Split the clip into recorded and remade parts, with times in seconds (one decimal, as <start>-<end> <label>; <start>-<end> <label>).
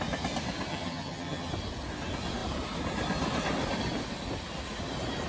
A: 0.0-0.7 recorded; 0.7-1.5 remade; 1.5-5.3 recorded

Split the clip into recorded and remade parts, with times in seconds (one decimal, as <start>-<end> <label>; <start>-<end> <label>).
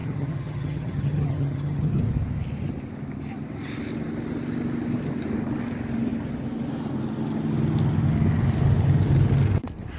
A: 0.0-2.0 remade; 2.0-10.0 recorded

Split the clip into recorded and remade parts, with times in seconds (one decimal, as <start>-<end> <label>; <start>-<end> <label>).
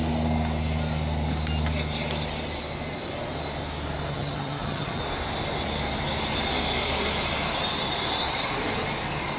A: 0.0-4.1 recorded; 4.1-5.0 remade; 5.0-9.4 recorded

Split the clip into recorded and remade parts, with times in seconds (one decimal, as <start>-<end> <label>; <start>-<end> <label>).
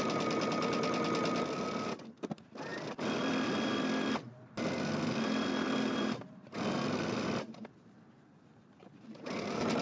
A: 0.0-9.8 recorded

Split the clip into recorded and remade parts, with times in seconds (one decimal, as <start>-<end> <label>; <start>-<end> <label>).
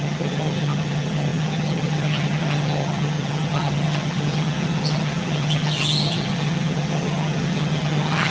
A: 0.0-8.3 remade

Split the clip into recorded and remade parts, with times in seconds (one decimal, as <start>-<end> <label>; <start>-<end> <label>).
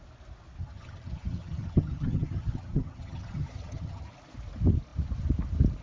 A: 0.0-0.6 recorded; 0.6-4.1 remade; 4.1-5.8 recorded